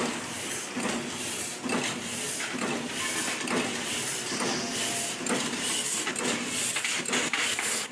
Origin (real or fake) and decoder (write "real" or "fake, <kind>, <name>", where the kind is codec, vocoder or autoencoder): real